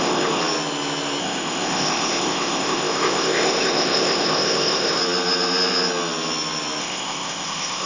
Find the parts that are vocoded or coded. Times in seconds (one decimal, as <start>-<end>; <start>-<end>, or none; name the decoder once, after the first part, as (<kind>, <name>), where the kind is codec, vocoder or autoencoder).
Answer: 0.0-0.4 (codec, ZipCodec); 1.2-5.0; 6.8-7.9